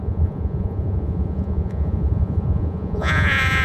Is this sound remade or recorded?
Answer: remade